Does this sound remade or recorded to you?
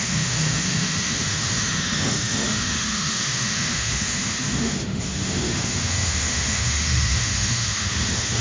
remade